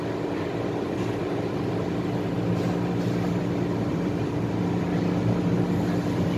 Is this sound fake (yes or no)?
no